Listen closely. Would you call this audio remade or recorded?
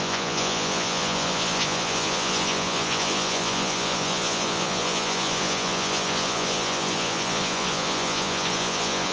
remade